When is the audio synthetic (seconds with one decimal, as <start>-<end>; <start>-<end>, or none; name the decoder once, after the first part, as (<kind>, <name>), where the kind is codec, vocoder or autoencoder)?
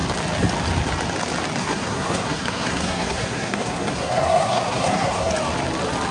1.6-5.3 (codec, SNAC)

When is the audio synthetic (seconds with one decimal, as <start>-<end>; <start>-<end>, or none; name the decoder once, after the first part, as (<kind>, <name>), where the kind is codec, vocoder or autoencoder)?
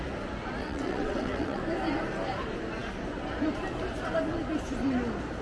0.6-1.6 (vocoder, WaveNeXt)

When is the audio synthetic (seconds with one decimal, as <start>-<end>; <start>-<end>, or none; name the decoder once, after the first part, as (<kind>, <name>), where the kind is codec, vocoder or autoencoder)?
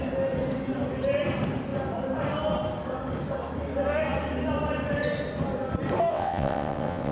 6.1-7.1 (vocoder, WaveNeXt)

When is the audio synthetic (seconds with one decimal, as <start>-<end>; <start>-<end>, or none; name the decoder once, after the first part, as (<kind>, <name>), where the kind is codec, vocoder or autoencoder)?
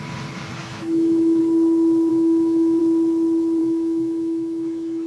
0.6-1.4 (autoencoder, DAC-VAE); 2.1-2.8; 3.6-5.1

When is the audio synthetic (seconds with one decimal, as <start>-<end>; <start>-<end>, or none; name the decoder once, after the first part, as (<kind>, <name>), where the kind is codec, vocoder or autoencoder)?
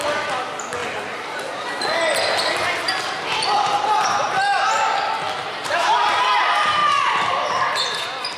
0.8-1.4 (vocoder, BigVGAN v2); 5.4-6.3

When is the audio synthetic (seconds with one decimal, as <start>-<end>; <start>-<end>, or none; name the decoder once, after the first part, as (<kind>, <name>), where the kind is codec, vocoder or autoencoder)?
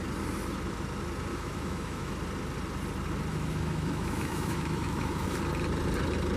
1.3-2.1 (autoencoder, DAC-VAE); 3.3-5.4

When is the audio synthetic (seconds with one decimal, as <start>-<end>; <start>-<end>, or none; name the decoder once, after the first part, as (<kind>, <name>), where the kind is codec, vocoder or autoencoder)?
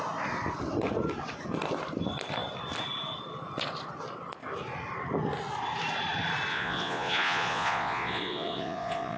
6.5-9.2 (vocoder, Vocos)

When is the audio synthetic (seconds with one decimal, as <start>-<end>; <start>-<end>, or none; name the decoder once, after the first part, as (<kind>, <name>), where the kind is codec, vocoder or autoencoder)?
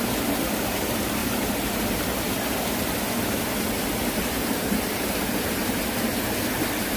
4.2-5.9 (vocoder, BigVGAN v2)